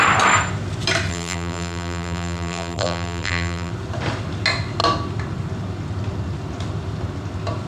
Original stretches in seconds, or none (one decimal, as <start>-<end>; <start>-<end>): 0.0-1.1; 3.7-7.7